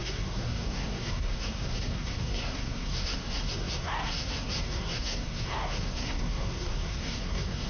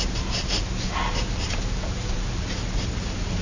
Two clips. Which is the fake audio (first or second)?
first